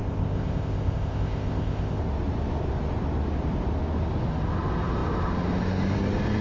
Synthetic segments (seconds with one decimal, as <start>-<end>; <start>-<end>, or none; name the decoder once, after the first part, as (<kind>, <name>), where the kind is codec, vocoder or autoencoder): 0.0-2.0 (codec, ZipCodec)